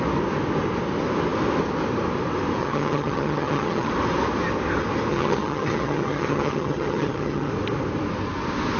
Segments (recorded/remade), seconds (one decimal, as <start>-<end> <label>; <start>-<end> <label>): 0.0-2.6 recorded; 2.6-3.9 remade; 3.9-5.1 recorded; 5.1-7.5 remade; 7.5-8.8 recorded